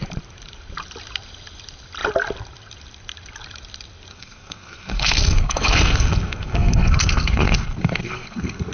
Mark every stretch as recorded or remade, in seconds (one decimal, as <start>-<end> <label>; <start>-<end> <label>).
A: 0.0-4.1 recorded; 4.1-8.7 remade